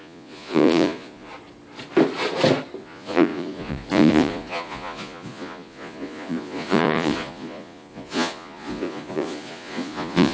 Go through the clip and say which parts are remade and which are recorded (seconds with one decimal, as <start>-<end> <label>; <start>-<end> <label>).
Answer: 0.0-1.3 remade; 1.3-2.8 recorded; 2.8-10.3 remade